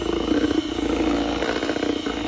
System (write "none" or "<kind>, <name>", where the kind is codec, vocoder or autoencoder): none